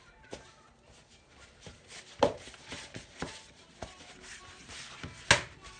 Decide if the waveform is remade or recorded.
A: recorded